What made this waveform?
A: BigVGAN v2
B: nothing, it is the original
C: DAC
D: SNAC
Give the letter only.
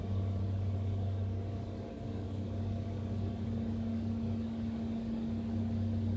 C